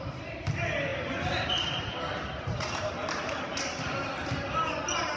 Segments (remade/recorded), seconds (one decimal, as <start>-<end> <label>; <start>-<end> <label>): 0.0-5.2 recorded